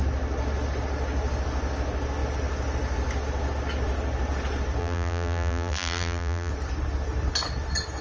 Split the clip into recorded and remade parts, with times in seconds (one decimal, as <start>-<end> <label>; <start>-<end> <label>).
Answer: 0.0-4.8 recorded; 4.8-6.5 remade; 6.5-8.0 recorded